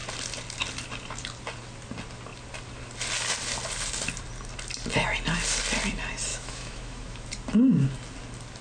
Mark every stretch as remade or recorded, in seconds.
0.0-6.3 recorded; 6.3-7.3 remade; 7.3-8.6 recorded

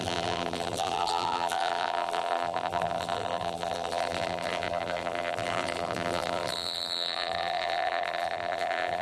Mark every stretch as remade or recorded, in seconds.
0.0-9.0 remade

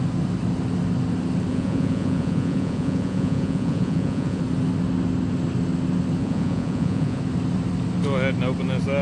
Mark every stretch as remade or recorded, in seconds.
0.0-1.5 recorded; 1.5-4.4 remade; 4.4-6.2 recorded; 6.2-7.2 remade; 7.2-9.0 recorded